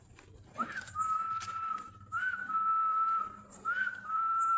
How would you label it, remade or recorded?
remade